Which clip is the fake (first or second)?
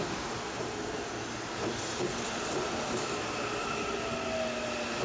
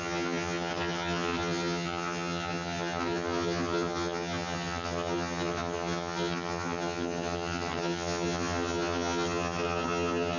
second